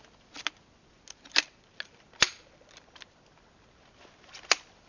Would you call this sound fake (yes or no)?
no